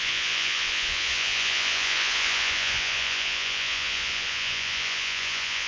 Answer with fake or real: fake